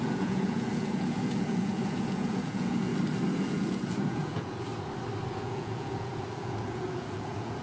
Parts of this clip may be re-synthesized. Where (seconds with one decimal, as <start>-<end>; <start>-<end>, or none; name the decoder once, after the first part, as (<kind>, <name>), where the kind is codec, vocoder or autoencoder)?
0.0-2.9 (vocoder, Vocos); 3.4-4.7; 5.3-7.6